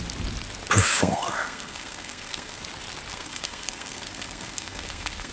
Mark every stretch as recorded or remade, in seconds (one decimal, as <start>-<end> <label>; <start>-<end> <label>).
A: 0.0-0.8 recorded; 0.8-2.6 remade; 2.6-3.1 recorded; 3.1-5.3 remade

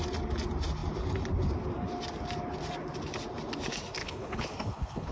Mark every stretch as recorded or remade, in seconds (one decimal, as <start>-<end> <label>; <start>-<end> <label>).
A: 0.0-4.0 recorded; 4.0-5.1 remade

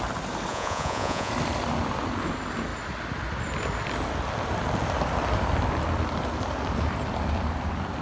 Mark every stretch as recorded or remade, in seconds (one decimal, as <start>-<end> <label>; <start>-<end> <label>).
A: 0.0-0.5 recorded; 0.5-1.3 remade; 1.3-8.0 recorded

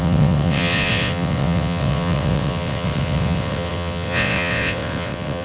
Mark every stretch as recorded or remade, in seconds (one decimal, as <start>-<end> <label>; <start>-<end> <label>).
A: 0.0-5.4 remade

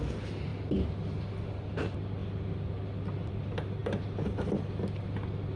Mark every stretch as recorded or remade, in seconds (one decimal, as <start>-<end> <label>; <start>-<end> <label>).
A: 0.0-5.6 recorded

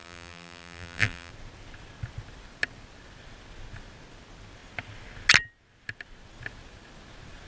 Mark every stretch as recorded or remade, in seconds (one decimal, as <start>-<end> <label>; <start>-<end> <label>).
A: 0.0-1.3 remade; 1.3-7.5 recorded

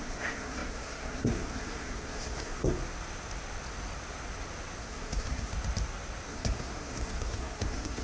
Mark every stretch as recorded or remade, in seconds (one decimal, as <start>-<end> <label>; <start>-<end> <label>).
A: 0.0-2.8 remade; 2.8-4.8 recorded; 4.8-5.5 remade; 5.5-6.3 recorded; 6.3-8.0 remade

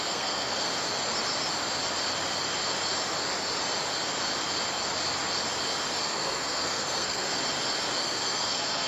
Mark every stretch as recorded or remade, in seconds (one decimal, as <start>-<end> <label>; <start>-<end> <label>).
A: 0.0-0.7 remade; 0.7-6.0 recorded; 6.0-7.3 remade; 7.3-8.0 recorded; 8.0-8.9 remade